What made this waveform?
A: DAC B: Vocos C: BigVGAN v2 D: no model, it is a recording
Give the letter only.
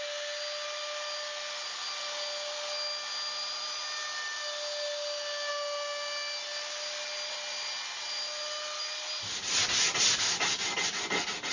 D